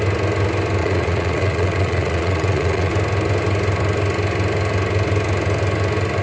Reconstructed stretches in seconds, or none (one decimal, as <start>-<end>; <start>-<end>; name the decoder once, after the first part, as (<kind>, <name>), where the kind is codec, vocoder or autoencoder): 0.8-2.9 (vocoder, Vocos)